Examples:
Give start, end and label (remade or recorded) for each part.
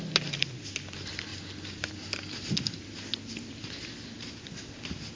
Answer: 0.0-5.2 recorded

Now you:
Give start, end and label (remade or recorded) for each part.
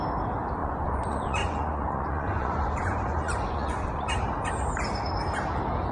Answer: 0.0-0.6 recorded; 0.6-4.1 remade; 4.1-5.9 recorded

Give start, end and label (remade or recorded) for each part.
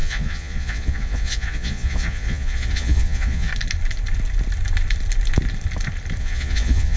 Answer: 0.0-3.5 remade; 3.5-6.2 recorded; 6.2-7.0 remade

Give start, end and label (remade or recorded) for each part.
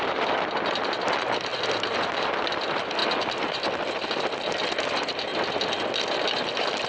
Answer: 0.0-6.9 recorded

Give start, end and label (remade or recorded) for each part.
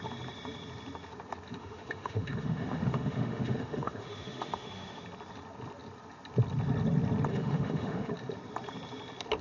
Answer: 0.0-1.6 recorded; 1.6-5.0 remade; 5.0-7.3 recorded; 7.3-8.1 remade; 8.1-9.4 recorded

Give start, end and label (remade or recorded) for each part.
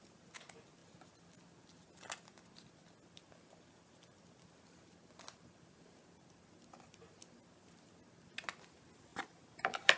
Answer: 0.0-9.1 recorded; 9.1-10.0 remade